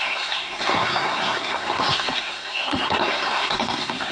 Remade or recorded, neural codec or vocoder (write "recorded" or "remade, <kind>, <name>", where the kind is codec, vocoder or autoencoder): remade, codec, SNAC